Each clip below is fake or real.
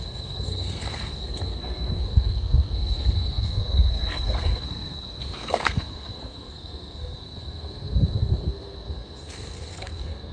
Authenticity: fake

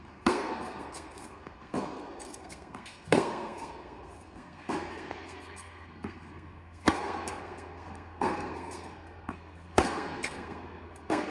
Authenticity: fake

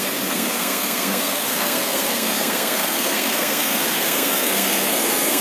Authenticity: fake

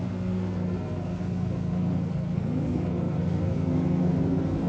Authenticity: fake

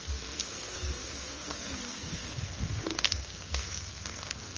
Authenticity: fake